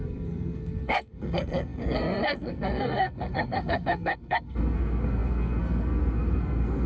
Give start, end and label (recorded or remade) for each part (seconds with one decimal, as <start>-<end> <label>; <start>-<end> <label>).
0.0-6.9 remade